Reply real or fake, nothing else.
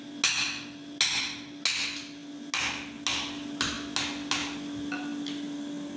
real